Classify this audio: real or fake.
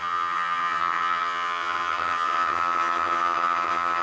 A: fake